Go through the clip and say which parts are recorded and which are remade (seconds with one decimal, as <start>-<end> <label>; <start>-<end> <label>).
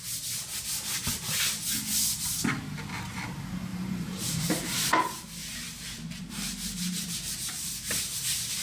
0.0-3.7 recorded; 3.7-4.9 remade; 4.9-5.4 recorded; 5.4-7.5 remade; 7.5-8.6 recorded